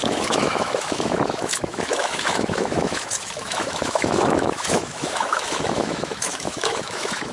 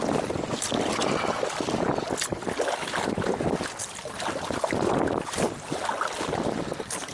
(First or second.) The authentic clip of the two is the second